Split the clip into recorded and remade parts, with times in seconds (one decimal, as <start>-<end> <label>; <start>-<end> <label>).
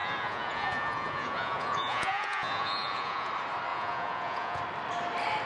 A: 0.0-3.3 remade; 3.3-3.7 recorded; 3.7-4.6 remade; 4.6-5.5 recorded